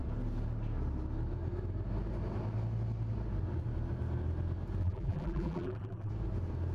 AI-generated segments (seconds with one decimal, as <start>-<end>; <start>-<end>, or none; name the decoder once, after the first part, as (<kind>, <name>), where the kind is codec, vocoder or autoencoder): 4.8-6.1 (vocoder, BigVGAN v2)